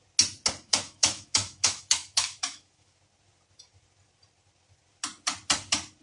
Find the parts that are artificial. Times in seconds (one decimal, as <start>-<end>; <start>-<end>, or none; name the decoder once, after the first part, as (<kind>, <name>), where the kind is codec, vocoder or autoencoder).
0.7-3.0 (autoencoder, DAC-VAE)